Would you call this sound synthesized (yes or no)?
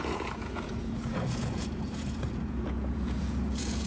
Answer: yes